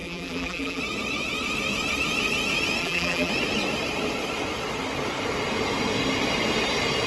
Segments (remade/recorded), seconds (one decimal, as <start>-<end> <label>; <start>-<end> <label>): 0.0-0.8 remade; 0.8-2.8 recorded; 2.8-3.3 remade; 3.3-7.1 recorded